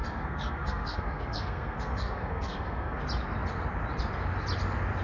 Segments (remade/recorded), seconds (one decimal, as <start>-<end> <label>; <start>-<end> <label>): 0.0-3.0 remade; 3.0-5.0 recorded